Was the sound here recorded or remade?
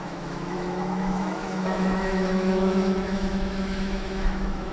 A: remade